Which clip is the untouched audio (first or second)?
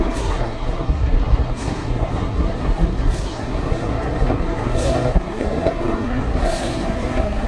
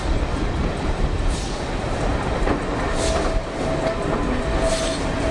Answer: second